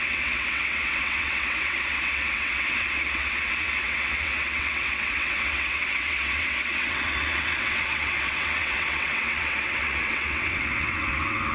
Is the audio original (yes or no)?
no